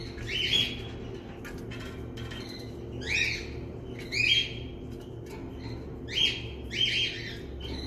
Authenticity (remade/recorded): recorded